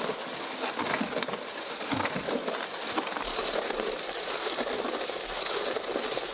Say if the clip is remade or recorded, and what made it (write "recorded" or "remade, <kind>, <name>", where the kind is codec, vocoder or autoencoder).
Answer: recorded